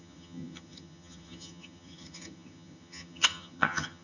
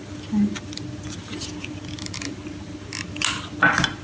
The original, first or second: second